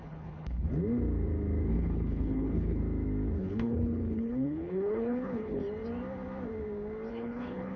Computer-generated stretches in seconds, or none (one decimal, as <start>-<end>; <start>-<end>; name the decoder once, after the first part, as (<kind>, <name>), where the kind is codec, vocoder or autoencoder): 0.0-0.7 (codec, HILCodec); 1.7-2.8; 3.4-5.6; 7.1-7.8